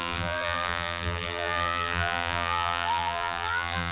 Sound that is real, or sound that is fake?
fake